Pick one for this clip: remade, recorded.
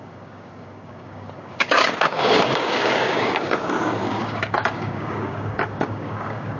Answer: remade